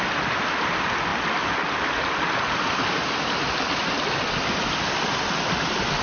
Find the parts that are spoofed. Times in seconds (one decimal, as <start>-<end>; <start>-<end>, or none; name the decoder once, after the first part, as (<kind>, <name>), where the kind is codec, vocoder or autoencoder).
none